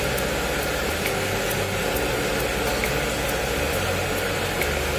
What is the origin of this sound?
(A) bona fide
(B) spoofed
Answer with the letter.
A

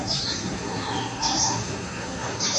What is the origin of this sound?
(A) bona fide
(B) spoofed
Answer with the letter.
B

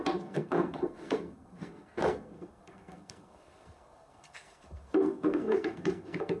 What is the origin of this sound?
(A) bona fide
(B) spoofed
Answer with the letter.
B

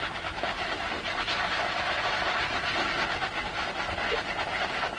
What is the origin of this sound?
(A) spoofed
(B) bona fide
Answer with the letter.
B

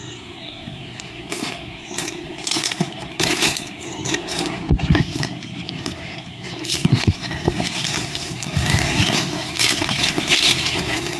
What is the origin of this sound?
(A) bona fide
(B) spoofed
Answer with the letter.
B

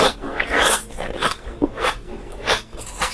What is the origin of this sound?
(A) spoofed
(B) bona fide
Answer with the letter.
A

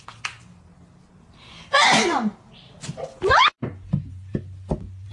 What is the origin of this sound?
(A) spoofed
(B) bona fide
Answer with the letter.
B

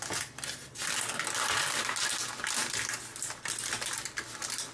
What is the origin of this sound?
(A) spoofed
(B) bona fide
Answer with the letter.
B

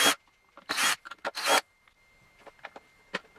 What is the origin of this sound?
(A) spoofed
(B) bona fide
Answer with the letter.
B